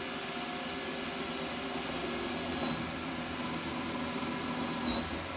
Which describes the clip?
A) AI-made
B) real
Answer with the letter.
B